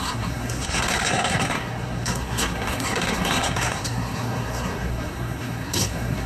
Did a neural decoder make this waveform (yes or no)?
yes